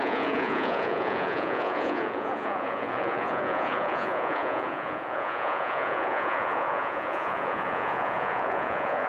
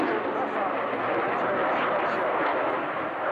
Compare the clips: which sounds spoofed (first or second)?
first